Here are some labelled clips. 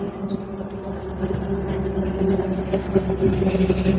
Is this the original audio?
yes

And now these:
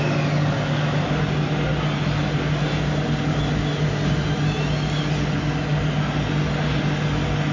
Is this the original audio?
yes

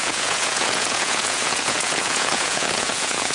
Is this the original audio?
no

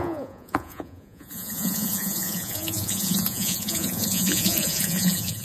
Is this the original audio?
no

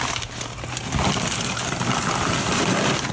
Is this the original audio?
yes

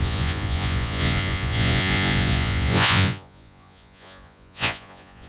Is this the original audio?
no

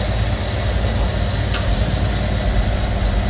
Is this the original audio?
yes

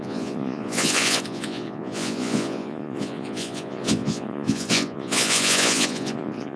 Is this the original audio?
no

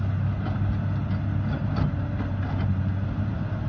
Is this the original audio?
yes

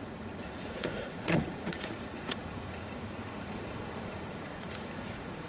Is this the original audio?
no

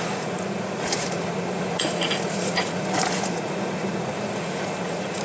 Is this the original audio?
no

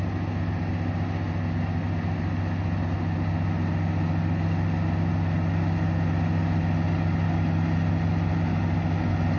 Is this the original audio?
yes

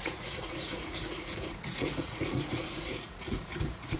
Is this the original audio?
no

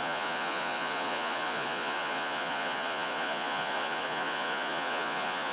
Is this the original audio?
no